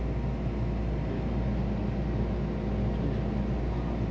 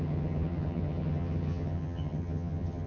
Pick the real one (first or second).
first